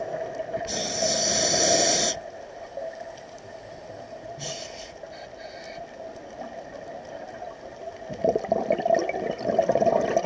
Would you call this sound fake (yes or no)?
no